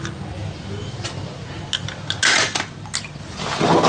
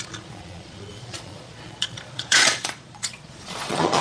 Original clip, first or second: first